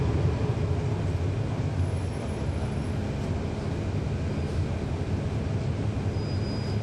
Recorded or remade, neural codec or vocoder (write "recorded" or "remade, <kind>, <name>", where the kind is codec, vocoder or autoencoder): recorded